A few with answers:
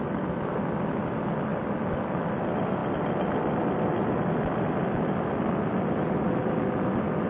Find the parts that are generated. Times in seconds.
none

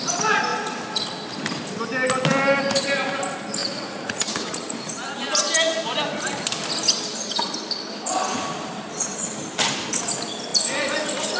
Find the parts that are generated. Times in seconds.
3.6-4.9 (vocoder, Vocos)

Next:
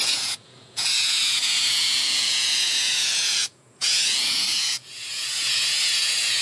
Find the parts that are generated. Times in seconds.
0.0-6.4 (vocoder, Vocos)

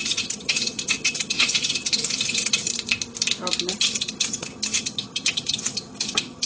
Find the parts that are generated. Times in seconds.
0.0-2.7 (vocoder, HiFi-GAN); 3.7-6.5